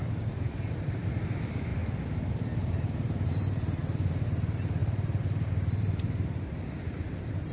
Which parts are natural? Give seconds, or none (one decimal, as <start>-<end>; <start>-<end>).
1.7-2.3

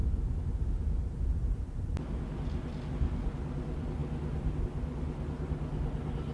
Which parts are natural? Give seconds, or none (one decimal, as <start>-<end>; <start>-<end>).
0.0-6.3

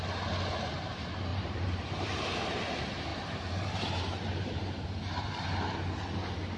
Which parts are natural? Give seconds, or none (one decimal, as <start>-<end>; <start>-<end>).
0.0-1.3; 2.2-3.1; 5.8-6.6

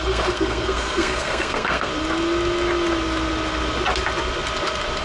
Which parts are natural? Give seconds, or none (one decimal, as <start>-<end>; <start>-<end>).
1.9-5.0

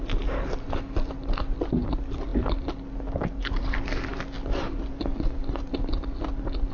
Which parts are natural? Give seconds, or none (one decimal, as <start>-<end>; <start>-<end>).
0.0-6.7

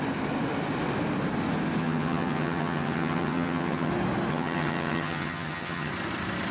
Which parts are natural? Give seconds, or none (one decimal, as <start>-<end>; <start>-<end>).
0.0-1.8; 3.9-4.3; 5.9-6.5